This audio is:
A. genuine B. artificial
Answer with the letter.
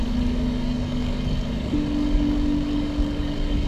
B